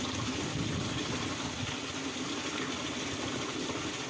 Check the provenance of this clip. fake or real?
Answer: real